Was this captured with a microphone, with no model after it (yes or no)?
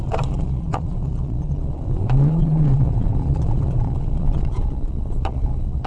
no